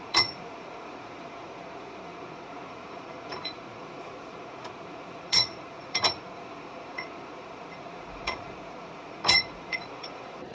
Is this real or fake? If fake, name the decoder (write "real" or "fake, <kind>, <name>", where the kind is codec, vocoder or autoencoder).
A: fake, vocoder, Vocos